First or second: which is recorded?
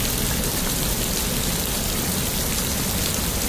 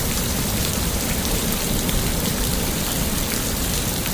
first